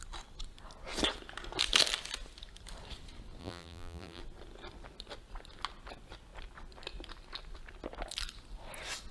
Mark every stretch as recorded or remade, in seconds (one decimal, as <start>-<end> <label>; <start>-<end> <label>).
0.0-3.4 recorded; 3.4-4.2 remade; 4.2-9.1 recorded